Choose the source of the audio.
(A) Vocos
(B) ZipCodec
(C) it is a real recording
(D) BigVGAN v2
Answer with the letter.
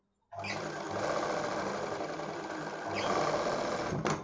C